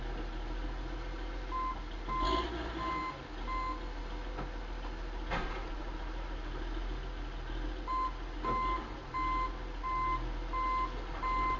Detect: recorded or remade recorded